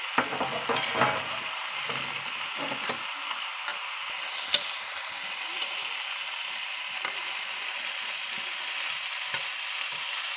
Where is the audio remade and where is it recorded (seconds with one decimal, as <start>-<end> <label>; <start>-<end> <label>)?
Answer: 0.0-10.4 recorded